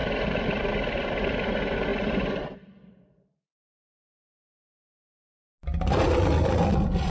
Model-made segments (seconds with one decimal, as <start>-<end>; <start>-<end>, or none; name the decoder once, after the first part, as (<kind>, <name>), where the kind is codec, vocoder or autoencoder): 1.9-5.3 (vocoder, BigVGAN v2)